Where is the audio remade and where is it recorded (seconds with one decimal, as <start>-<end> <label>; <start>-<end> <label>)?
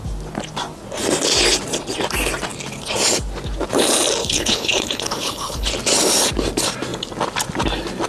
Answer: 0.0-4.2 recorded; 4.2-5.7 remade; 5.7-8.1 recorded